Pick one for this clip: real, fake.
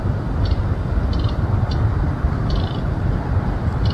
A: real